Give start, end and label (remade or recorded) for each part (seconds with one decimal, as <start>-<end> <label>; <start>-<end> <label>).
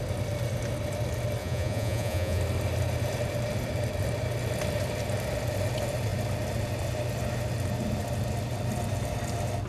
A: 0.0-1.4 recorded; 1.4-2.4 remade; 2.4-9.7 recorded